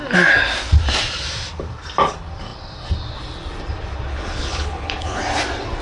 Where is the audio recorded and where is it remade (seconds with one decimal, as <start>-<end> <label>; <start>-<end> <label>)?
0.0-4.1 recorded; 4.1-5.2 remade; 5.2-5.8 recorded